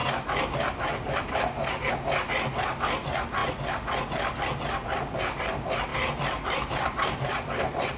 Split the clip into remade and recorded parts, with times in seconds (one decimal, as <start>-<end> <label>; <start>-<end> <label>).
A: 0.0-1.9 remade; 1.9-5.9 recorded; 5.9-8.0 remade